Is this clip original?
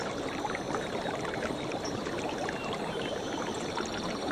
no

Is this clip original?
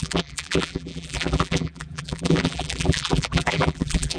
no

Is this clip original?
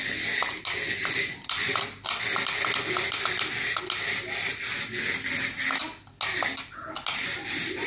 yes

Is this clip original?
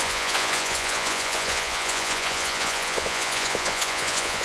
no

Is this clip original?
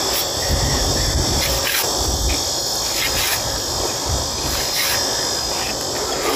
yes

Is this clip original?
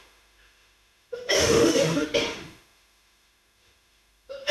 no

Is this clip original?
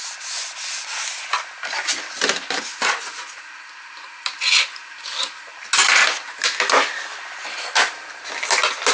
yes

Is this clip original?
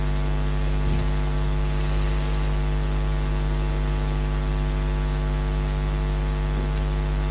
yes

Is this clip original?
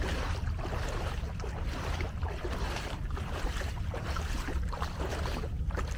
no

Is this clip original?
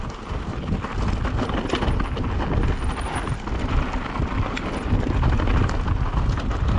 yes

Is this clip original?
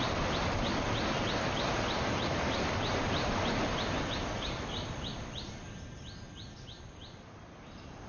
yes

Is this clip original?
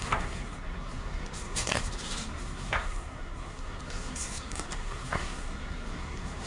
no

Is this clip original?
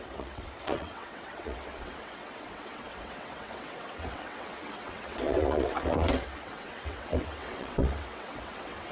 no